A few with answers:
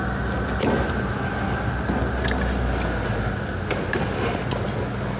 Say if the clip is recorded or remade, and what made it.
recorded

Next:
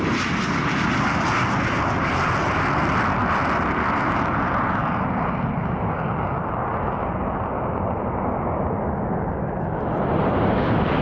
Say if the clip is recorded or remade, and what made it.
recorded